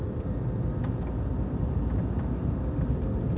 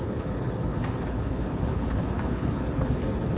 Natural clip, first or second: first